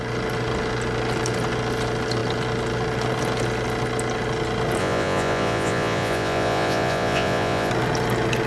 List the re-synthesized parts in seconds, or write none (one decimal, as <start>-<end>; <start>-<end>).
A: 4.8-7.7